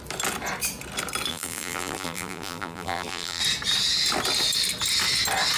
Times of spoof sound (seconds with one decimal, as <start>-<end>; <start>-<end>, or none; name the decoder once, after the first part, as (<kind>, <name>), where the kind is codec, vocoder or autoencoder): 1.3-3.4 (vocoder, BigVGAN v2)